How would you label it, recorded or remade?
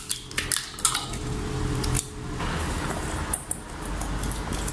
recorded